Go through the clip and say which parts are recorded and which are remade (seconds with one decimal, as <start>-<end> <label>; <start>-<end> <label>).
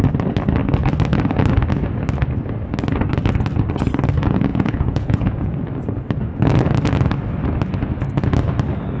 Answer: 0.0-4.5 recorded; 4.5-5.6 remade; 5.6-9.0 recorded